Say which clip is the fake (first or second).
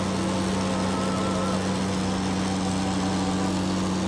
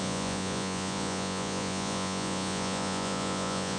second